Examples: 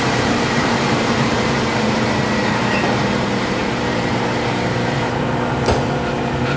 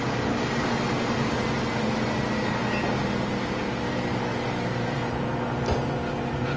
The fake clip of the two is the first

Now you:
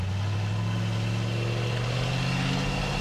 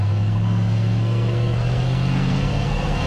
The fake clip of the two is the second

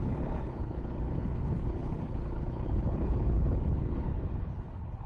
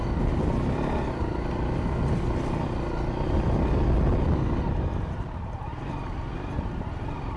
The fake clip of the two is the first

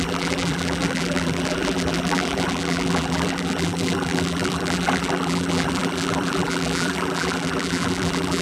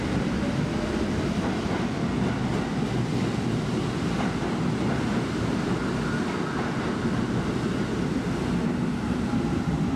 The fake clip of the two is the first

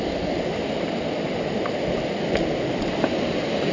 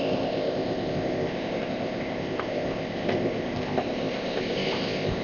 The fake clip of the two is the second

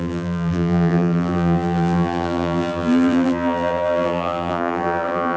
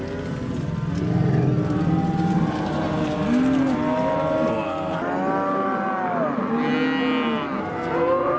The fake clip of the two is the first